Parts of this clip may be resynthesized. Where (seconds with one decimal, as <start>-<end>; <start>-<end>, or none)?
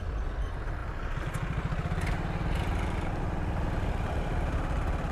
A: none